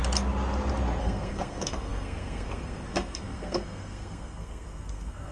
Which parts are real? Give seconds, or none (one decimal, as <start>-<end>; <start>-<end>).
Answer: 0.0-1.0